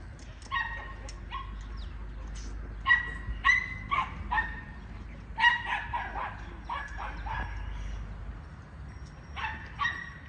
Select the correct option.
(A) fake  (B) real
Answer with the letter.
B